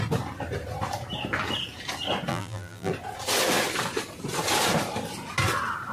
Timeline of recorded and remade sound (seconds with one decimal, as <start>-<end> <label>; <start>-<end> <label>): 0.0-2.3 recorded; 2.3-2.9 remade; 2.9-5.9 recorded